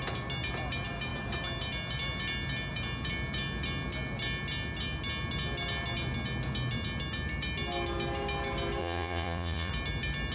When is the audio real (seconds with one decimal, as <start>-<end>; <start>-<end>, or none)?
0.0-8.8; 9.7-10.3